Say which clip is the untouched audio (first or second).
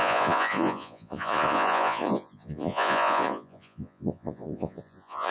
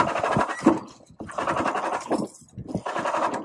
second